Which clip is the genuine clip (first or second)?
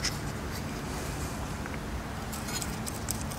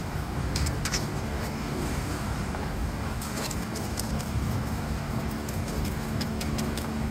first